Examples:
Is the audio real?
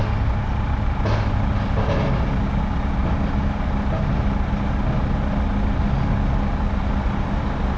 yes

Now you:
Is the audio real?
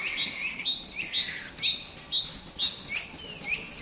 yes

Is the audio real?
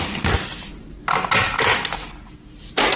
yes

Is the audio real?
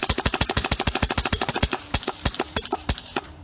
no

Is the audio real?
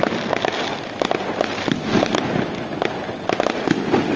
yes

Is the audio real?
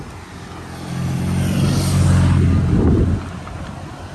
yes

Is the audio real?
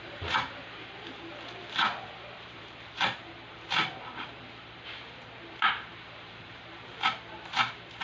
no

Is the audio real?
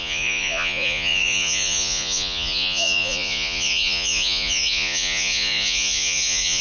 no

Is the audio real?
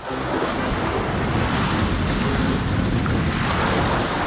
yes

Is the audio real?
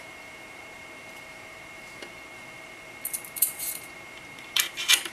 no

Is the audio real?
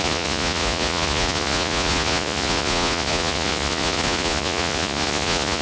no